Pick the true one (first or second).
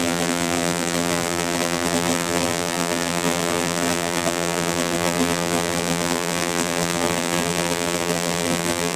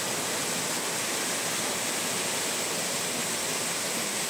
second